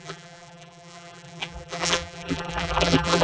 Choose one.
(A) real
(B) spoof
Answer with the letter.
B